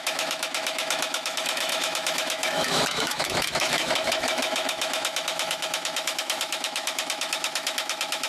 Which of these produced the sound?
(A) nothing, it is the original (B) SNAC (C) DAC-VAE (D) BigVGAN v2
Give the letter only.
C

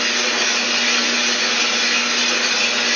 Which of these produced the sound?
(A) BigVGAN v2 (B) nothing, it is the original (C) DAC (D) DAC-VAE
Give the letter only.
B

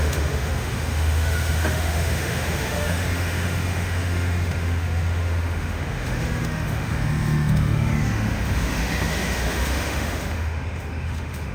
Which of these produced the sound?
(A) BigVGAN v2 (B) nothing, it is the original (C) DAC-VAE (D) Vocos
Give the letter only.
C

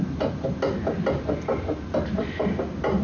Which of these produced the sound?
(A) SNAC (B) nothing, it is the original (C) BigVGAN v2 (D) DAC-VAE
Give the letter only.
B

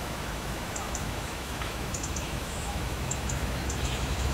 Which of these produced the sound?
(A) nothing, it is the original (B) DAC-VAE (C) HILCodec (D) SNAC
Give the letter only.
B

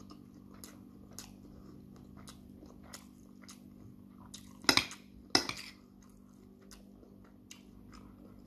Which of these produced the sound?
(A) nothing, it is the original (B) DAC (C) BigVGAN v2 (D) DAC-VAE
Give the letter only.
A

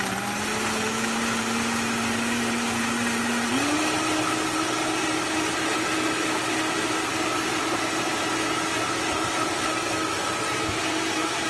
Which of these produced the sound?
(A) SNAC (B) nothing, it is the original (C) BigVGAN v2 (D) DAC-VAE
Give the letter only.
B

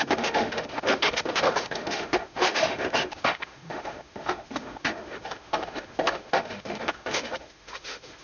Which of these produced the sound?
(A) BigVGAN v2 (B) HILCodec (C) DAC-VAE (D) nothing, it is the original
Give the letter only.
C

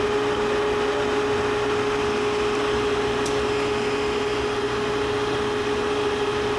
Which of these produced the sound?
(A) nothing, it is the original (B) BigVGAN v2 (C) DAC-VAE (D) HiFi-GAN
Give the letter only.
A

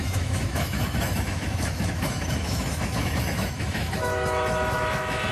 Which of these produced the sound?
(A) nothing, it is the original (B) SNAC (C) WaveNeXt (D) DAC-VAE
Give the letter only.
D